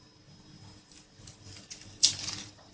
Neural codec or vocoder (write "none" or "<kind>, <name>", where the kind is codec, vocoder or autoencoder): none